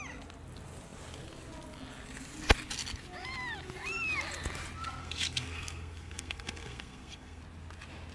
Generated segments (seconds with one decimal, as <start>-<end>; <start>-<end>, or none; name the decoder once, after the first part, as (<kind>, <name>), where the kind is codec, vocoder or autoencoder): 5.0-7.4 (codec, SNAC)